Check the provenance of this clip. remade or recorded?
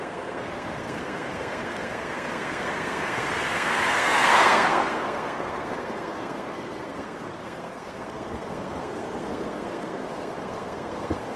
remade